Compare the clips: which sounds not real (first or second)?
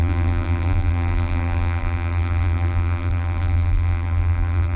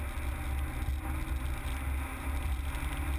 first